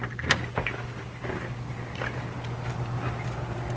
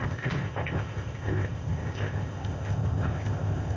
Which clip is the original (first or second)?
first